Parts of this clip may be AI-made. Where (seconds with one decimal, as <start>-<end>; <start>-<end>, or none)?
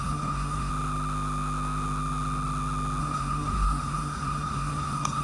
0.0-0.7; 3.0-5.2